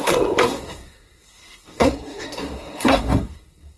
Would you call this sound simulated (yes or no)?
yes